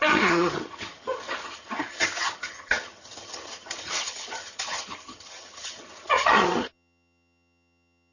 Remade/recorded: remade